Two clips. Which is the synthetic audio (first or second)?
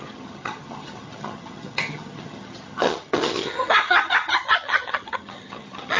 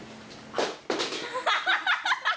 first